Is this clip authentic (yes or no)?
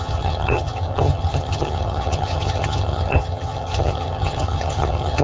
no